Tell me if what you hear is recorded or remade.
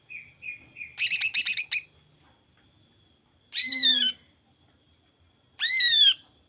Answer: recorded